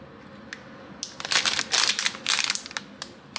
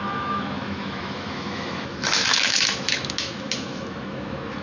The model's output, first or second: second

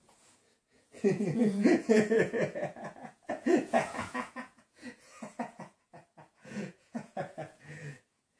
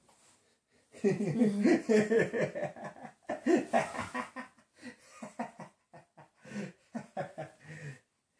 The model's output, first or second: first